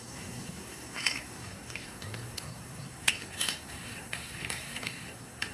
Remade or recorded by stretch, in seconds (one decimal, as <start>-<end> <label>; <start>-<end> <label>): 0.0-5.5 remade